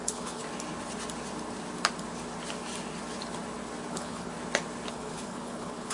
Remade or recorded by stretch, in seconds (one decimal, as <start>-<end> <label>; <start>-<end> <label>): 0.0-0.4 remade; 0.4-3.9 recorded; 3.9-4.3 remade; 4.3-4.9 recorded; 4.9-5.9 remade